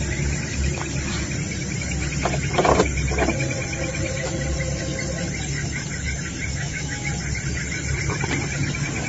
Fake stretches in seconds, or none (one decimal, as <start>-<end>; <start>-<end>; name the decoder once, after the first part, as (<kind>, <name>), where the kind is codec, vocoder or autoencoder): 6.5-7.1 (autoencoder, DAC-VAE)